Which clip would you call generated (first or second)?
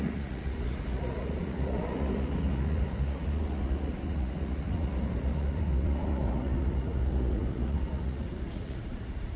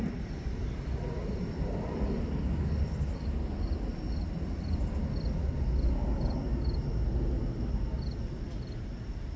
first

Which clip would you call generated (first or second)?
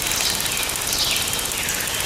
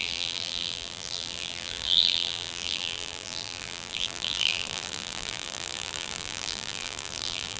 second